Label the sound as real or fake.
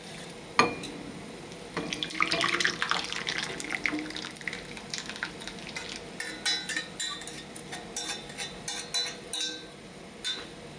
real